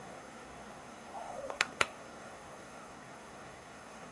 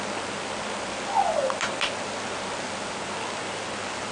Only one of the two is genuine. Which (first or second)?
second